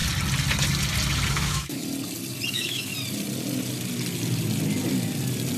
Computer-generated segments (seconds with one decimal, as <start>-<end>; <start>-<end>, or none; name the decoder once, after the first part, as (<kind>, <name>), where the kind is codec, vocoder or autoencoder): 1.3-1.8 (autoencoder, DAC-VAE); 2.5-2.9